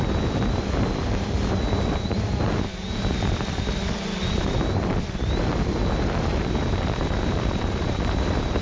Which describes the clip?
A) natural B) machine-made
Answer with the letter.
B